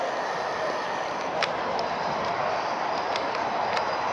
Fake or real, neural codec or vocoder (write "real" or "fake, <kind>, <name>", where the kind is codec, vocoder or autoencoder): real